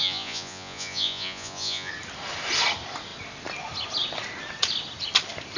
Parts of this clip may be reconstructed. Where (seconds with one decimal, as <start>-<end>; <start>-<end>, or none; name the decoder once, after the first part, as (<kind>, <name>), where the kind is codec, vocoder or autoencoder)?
0.0-1.9 (vocoder, Vocos)